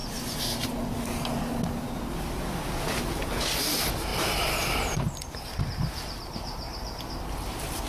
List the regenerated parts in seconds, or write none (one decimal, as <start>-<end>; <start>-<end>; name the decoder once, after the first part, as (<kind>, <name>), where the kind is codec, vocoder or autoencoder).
4.1-7.0 (vocoder, BigVGAN v2)